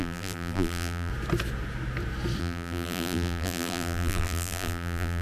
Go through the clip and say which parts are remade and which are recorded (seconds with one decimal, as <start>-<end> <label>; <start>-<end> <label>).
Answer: 0.0-1.1 remade; 1.1-2.4 recorded; 2.4-5.2 remade